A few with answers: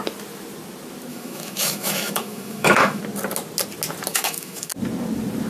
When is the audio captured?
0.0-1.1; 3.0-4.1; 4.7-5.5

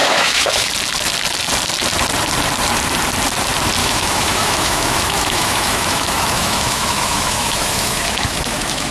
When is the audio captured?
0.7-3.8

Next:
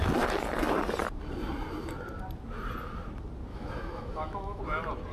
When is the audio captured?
0.0-3.5; 4.6-5.1

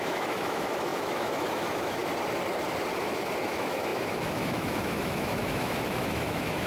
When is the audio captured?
2.0-3.0

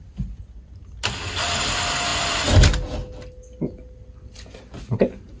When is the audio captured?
0.0-5.4

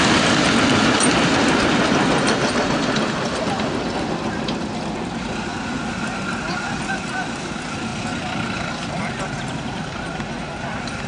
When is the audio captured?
0.0-11.1